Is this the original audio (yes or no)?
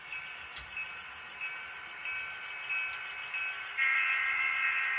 yes